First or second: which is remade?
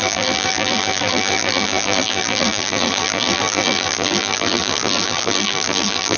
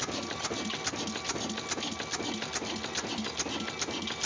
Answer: first